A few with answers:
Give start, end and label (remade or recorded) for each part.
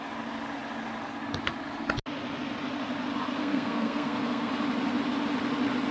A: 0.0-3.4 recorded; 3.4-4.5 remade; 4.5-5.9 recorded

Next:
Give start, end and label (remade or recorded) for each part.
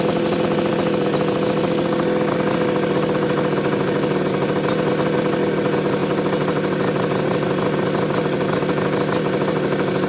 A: 0.0-10.1 recorded